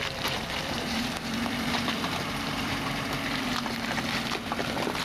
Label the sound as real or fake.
fake